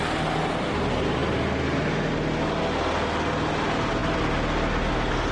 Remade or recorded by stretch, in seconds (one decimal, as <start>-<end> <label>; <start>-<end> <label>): 0.0-5.3 recorded